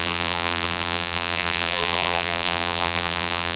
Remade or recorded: remade